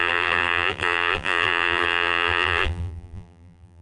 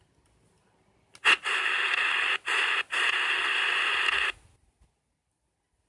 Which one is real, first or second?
second